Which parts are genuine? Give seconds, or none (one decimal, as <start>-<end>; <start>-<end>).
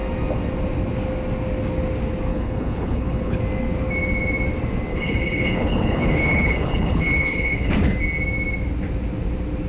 0.0-2.3; 3.4-4.9; 7.7-9.7